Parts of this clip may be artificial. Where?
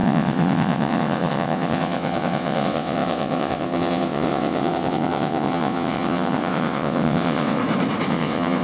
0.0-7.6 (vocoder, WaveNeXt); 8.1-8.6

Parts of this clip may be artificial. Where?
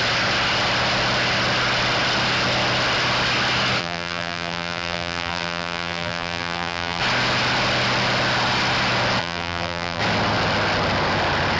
3.8-7.0 (vocoder, BigVGAN v2); 9.2-10.0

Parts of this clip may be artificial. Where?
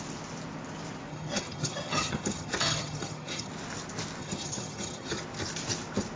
1.1-3.5 (vocoder, HiFi-GAN); 4.2-5.2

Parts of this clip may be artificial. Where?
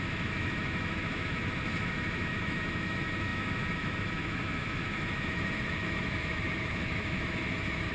0.0-7.9 (autoencoder, DAC-VAE)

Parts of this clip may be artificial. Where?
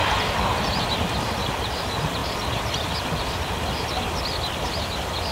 0.0-1.1 (vocoder, BigVGAN v2); 2.2-3.7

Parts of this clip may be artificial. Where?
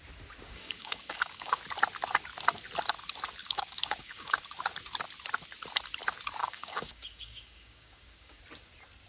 0.4-1.6 (codec, DAC); 3.4-4.4; 6.4-8.4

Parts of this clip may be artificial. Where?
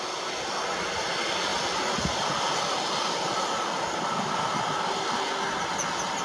none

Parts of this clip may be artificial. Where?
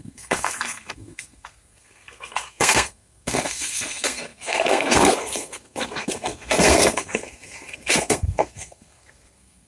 0.0-9.7 (codec, SNAC)